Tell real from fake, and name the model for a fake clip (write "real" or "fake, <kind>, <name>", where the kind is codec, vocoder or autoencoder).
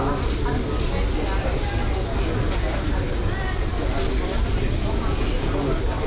real